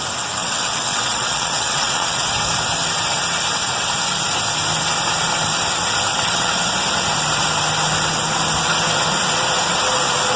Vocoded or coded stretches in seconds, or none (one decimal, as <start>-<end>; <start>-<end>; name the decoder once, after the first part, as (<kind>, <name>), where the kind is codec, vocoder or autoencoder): 0.4-2.3 (vocoder, WaveNeXt); 6.1-6.7